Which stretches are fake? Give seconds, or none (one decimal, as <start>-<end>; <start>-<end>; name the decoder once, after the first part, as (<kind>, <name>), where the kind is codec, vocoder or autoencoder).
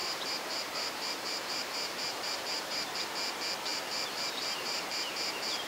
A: 0.0-3.0 (vocoder, BigVGAN v2); 3.7-5.7